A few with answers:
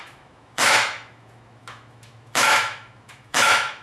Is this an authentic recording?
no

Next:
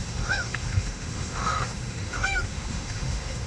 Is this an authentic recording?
no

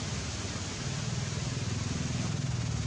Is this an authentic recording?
yes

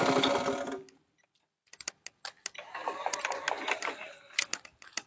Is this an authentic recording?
yes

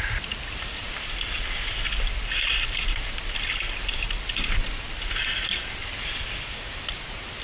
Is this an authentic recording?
yes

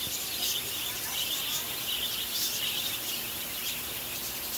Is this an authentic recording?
yes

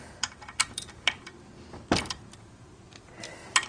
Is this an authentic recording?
yes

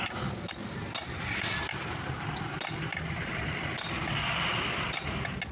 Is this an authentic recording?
yes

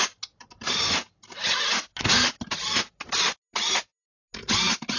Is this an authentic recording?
yes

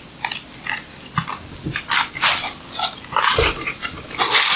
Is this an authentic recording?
yes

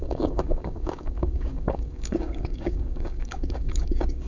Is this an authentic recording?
no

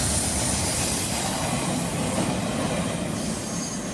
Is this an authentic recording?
yes